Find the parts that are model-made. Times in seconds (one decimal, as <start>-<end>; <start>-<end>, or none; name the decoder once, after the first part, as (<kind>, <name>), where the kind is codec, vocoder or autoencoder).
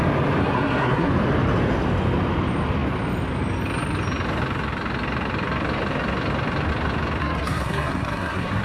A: 0.4-1.1 (codec, SNAC); 7.2-8.6